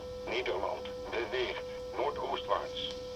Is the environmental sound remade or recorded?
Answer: recorded